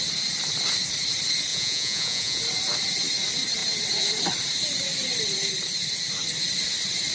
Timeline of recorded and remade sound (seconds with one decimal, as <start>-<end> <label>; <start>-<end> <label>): 0.0-1.5 recorded; 1.5-2.4 remade; 2.4-7.1 recorded